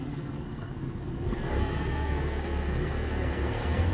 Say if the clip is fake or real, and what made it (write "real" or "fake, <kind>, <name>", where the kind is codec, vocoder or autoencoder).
fake, codec, SNAC